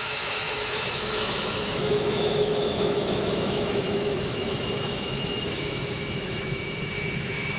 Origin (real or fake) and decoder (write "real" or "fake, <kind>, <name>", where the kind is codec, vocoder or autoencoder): fake, autoencoder, DAC-VAE